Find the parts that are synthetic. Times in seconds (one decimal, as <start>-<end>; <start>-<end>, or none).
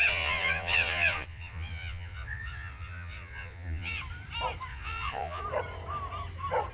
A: 0.0-4.0; 4.7-5.4